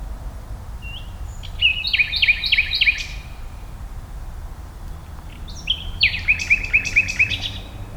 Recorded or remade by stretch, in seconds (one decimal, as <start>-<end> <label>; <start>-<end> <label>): 0.0-1.7 recorded; 1.7-3.8 remade; 3.8-5.0 recorded; 5.0-7.3 remade; 7.3-8.0 recorded